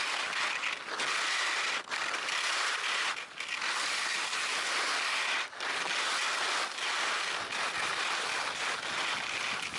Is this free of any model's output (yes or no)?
yes